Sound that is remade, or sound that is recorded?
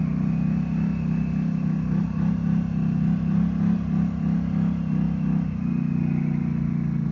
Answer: recorded